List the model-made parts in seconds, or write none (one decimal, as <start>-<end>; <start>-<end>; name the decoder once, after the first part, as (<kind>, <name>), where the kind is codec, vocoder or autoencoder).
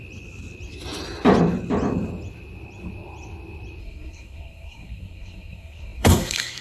3.8-6.6 (codec, SNAC)